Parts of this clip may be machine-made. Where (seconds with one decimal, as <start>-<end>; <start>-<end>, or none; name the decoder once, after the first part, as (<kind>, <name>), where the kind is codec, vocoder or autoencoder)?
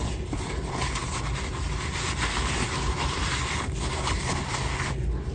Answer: none